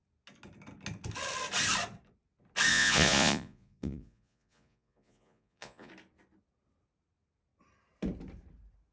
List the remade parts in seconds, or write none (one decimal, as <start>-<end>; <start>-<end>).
2.7-5.9